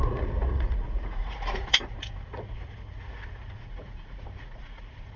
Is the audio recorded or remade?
remade